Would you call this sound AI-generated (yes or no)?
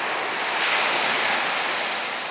no